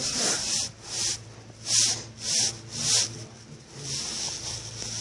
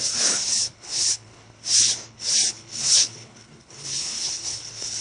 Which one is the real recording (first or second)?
first